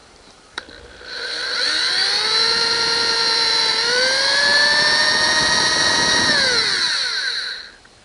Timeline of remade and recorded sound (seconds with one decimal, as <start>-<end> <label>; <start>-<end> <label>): 0.0-4.5 remade; 4.5-5.6 recorded; 5.6-8.0 remade